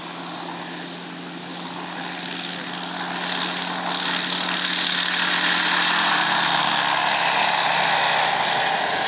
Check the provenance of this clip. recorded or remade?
recorded